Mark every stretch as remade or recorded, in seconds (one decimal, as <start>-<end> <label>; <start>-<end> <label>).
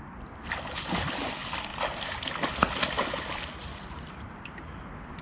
0.0-5.2 recorded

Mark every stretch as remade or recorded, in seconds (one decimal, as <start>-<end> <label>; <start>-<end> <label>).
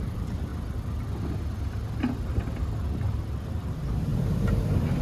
0.0-0.5 remade; 0.5-3.5 recorded; 3.5-5.0 remade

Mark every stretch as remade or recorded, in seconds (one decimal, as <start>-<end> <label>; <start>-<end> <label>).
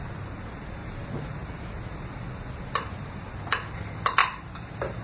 0.0-0.8 recorded; 0.8-2.2 remade; 2.2-4.2 recorded; 4.2-5.0 remade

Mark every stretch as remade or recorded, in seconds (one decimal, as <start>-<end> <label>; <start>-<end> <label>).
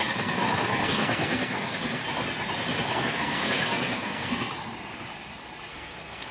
0.0-2.0 remade; 2.0-2.9 recorded; 2.9-4.5 remade; 4.5-5.7 recorded; 5.7-6.3 remade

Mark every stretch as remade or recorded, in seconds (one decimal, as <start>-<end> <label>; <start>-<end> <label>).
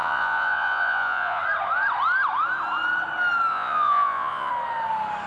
0.0-1.4 remade; 1.4-3.5 recorded; 3.5-4.5 remade; 4.5-5.3 recorded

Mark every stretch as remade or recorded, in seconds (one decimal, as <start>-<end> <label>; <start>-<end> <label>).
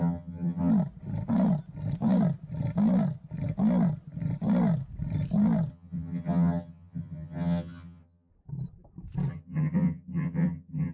0.0-0.7 remade; 0.7-5.7 recorded; 5.7-8.3 remade; 8.3-9.3 recorded; 9.3-10.9 remade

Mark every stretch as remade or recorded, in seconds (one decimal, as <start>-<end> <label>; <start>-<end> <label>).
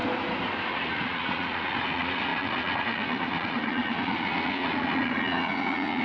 0.0-0.7 recorded; 0.7-6.0 remade